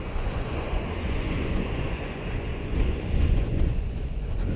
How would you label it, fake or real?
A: fake